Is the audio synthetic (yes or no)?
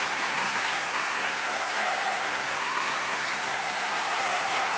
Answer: yes